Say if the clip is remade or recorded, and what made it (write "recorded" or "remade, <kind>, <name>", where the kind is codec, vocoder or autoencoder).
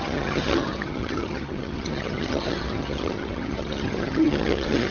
remade, vocoder, HiFi-GAN